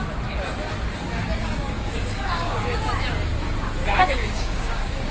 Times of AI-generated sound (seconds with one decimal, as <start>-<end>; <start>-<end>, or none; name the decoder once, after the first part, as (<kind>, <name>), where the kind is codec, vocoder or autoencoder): 1.4-2.8 (codec, DAC); 3.8-5.1